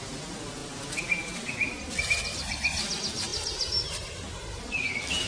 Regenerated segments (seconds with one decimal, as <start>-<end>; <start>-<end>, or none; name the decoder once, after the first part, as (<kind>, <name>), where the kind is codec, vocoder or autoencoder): 0.6-1.9 (vocoder, BigVGAN v2); 3.3-4.6